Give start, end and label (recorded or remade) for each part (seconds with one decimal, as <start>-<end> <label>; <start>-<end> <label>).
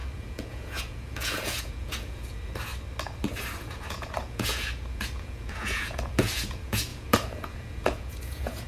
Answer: 0.0-2.7 remade; 2.7-3.6 recorded; 3.6-8.7 remade